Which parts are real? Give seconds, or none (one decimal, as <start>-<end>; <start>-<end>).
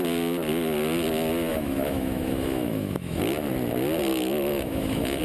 0.0-1.5; 3.2-4.1